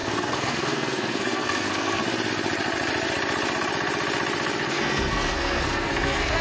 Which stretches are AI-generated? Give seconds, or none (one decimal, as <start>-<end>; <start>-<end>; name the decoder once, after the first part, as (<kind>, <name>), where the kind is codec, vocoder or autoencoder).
0.0-2.0 (codec, SNAC); 4.7-6.4